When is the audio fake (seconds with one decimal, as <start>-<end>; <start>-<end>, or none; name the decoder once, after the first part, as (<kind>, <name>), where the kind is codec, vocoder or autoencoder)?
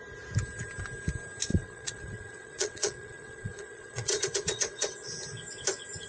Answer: 1.5-5.1 (vocoder, WaveNeXt)